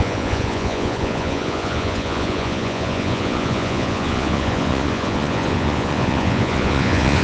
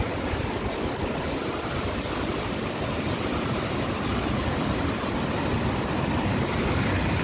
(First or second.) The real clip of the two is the second